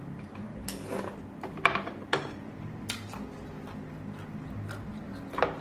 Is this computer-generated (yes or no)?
no